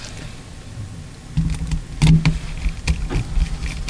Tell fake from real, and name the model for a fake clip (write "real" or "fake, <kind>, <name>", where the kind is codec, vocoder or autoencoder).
real